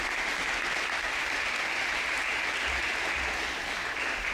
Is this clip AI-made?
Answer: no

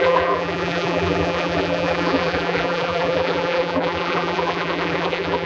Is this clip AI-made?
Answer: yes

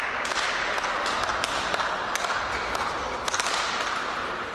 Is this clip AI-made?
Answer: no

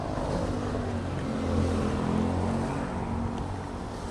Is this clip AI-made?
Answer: no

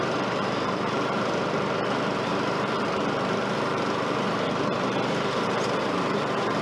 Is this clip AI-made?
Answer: yes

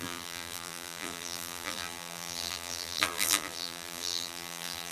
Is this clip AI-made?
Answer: yes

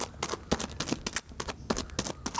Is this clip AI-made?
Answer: no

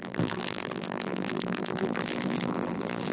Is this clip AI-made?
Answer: yes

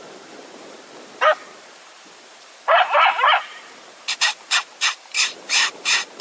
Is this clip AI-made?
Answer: yes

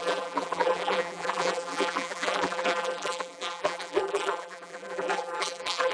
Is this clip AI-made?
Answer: yes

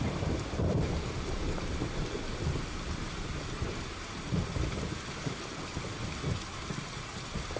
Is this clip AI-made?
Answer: yes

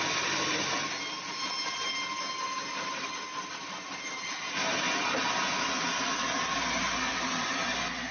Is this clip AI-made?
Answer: no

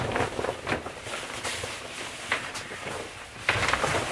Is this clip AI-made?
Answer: yes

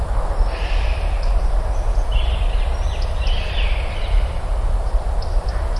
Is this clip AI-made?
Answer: yes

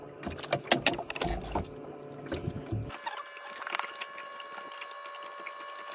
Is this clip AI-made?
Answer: no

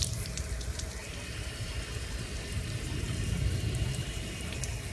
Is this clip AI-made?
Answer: yes